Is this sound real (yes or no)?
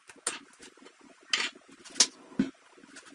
yes